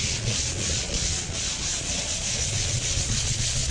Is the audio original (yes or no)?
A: no